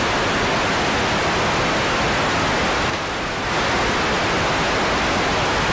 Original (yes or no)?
yes